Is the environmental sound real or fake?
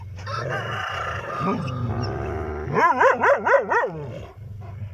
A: real